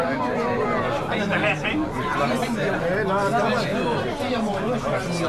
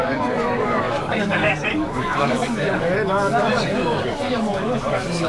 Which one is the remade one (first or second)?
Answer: second